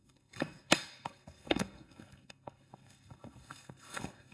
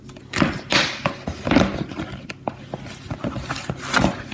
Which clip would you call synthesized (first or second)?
first